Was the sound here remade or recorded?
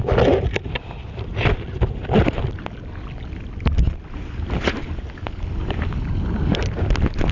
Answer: recorded